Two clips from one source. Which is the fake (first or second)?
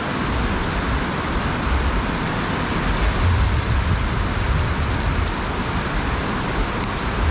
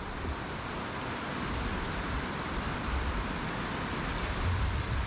second